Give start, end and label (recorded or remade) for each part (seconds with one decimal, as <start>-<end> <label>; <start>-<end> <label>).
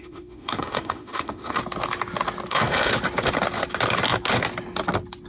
0.0-1.6 remade; 1.6-2.5 recorded; 2.5-2.9 remade; 2.9-5.3 recorded